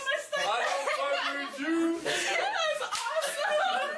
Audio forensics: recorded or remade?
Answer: recorded